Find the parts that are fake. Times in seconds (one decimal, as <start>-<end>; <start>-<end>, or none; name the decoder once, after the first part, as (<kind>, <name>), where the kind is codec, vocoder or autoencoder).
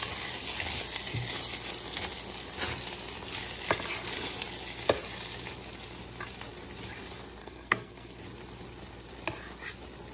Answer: 7.4-8.2 (codec, SNAC)